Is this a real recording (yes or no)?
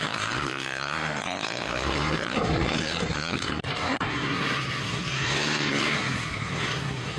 no